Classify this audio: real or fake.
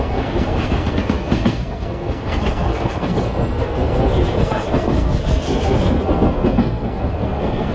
fake